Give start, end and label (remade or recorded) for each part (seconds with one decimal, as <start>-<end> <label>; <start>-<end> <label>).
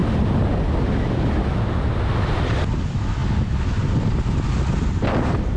0.0-5.6 recorded